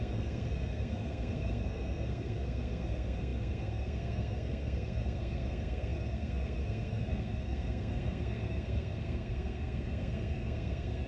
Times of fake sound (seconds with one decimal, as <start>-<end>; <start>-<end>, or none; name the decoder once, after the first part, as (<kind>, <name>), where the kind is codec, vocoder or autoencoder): 0.0-11.1 (codec, SNAC)